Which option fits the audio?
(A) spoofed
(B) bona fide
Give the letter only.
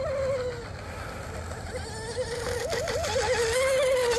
B